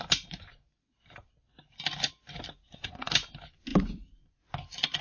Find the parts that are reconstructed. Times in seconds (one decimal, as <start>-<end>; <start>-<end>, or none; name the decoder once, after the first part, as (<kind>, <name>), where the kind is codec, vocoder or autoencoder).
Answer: 2.6-3.1 (codec, SNAC)